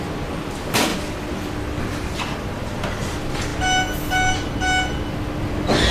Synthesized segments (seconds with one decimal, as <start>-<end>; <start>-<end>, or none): none